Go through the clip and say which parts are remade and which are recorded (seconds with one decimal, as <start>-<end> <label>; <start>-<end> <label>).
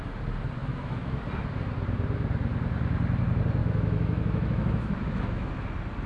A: 0.0-0.6 recorded; 0.6-1.2 remade; 1.2-3.6 recorded; 3.6-5.5 remade; 5.5-6.1 recorded